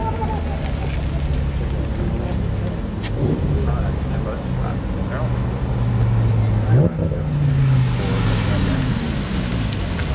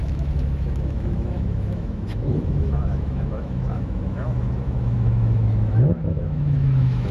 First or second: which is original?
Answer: first